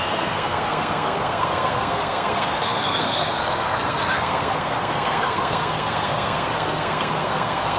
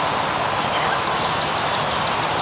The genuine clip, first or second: second